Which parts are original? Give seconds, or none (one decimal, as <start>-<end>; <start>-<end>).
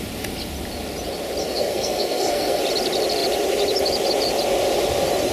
0.0-1.4; 2.6-5.3